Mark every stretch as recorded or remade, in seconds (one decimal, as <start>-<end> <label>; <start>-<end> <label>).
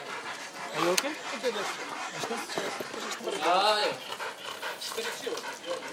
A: 0.0-3.8 recorded; 3.8-5.9 remade